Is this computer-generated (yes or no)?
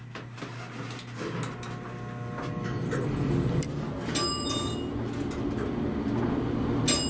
no